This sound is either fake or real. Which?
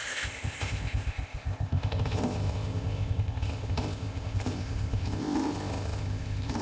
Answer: fake